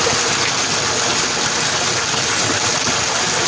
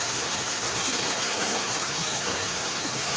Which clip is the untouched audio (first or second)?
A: first